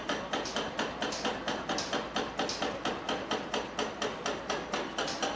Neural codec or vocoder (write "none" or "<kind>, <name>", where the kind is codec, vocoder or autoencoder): none